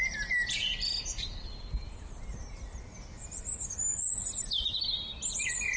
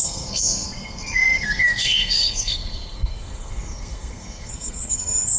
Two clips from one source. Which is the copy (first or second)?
second